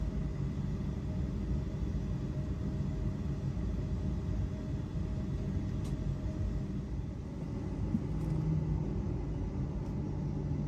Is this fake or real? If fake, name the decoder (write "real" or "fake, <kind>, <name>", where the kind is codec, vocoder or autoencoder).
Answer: real